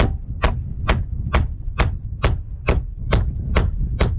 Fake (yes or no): no